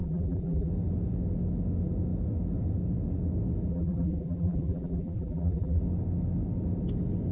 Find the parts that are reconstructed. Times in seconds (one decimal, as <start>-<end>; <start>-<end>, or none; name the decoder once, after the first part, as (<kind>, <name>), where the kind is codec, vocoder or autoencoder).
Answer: 0.0-0.7 (vocoder, BigVGAN v2); 3.7-5.8